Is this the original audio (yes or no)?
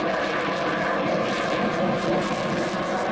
no